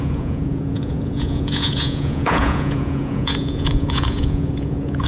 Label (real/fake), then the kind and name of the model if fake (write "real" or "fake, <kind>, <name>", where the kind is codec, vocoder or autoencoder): fake, vocoder, Vocos